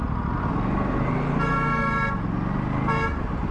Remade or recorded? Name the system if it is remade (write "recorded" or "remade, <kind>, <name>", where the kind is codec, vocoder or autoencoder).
recorded